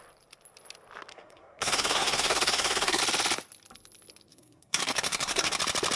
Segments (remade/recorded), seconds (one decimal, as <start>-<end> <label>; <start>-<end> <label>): 0.0-1.1 recorded; 1.1-3.0 remade; 3.0-4.3 recorded; 4.3-5.6 remade; 5.6-6.0 recorded